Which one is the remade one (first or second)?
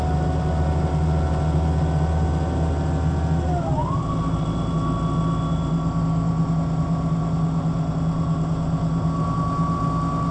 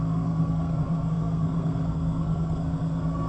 second